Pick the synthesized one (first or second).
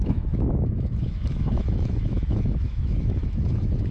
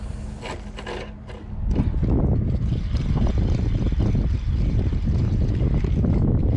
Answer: first